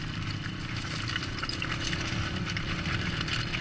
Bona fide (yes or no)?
yes